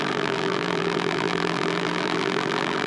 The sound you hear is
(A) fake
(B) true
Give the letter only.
A